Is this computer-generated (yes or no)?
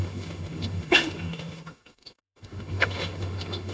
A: yes